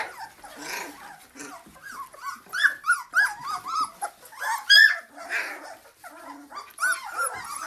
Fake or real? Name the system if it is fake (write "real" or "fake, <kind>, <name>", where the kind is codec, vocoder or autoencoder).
real